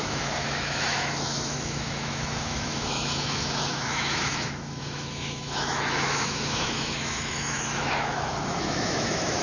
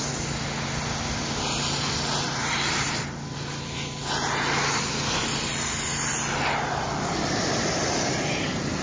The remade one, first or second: first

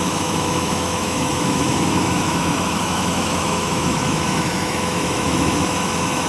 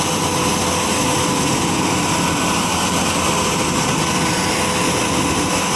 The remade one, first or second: first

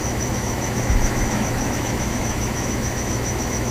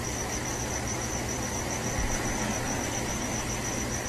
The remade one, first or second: first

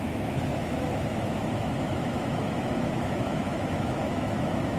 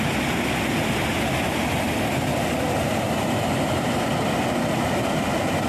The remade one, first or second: first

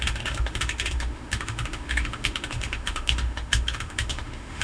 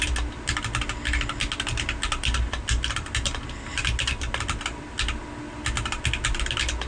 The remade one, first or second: first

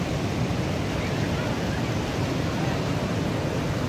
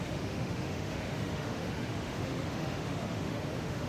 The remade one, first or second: second